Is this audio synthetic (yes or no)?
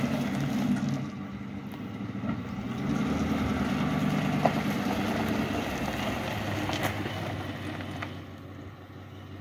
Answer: no